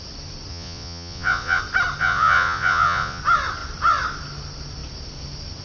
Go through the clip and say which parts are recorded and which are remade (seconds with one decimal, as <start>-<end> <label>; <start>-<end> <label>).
0.0-0.5 recorded; 0.5-1.6 remade; 1.6-2.0 recorded; 2.0-3.2 remade; 3.2-5.6 recorded